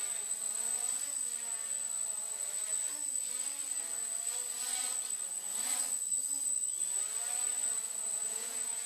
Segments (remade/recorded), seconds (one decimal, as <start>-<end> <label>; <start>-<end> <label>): 0.0-8.2 recorded; 8.2-8.9 remade